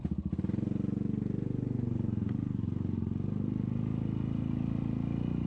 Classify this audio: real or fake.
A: real